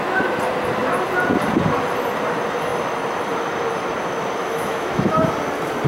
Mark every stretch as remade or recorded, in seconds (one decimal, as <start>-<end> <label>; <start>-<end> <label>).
0.0-4.4 recorded; 4.4-5.3 remade; 5.3-5.9 recorded